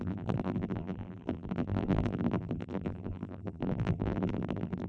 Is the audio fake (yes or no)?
yes